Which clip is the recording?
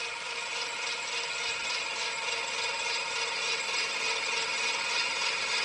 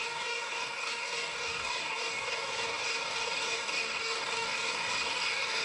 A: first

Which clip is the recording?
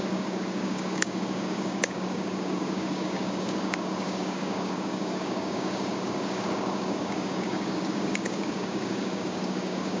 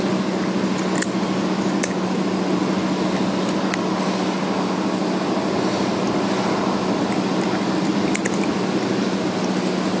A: second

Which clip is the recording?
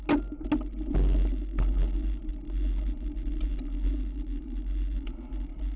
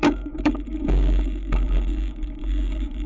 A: first